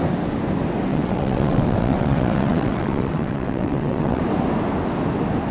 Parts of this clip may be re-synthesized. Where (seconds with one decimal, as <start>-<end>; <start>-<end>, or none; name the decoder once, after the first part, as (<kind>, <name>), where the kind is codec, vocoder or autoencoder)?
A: 0.9-4.2 (vocoder, WaveNeXt)